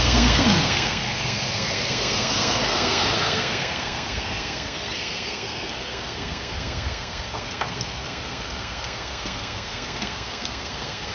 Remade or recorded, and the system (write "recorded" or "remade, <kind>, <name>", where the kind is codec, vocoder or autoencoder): remade, codec, SNAC